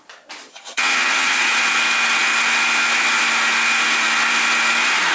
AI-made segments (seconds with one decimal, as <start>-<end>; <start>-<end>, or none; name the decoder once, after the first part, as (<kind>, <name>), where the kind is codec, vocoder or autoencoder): 0.5-1.4 (vocoder, HiFi-GAN)